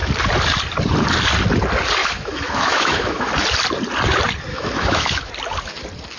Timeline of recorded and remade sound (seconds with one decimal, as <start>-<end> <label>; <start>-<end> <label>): 0.0-2.0 recorded; 2.0-3.3 remade; 3.3-4.5 recorded; 4.5-5.3 remade; 5.3-6.2 recorded